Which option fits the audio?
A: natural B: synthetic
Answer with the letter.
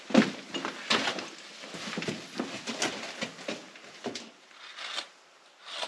A